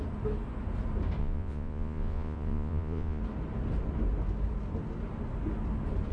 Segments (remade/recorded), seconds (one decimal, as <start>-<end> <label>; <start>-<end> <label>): 0.0-1.2 recorded; 1.2-3.2 remade; 3.2-6.1 recorded